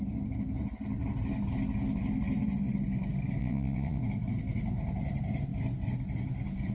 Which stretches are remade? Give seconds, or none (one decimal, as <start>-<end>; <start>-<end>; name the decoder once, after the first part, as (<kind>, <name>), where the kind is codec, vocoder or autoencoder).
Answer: 3.4-4.0 (vocoder, WaveNeXt)